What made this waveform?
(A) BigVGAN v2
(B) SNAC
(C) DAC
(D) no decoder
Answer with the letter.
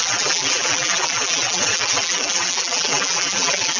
A